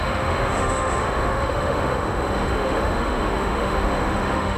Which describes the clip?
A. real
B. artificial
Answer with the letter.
B